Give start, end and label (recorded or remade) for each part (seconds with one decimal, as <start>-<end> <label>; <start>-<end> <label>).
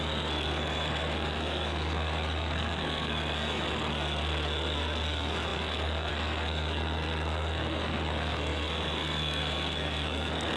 0.0-10.6 remade